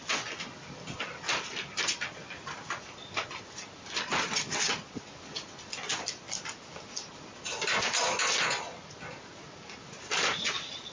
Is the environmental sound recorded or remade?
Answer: recorded